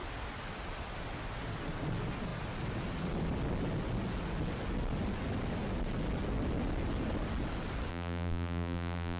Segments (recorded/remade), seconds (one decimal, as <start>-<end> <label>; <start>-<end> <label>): 0.0-7.9 recorded; 7.9-9.2 remade